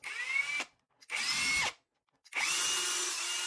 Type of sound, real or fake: real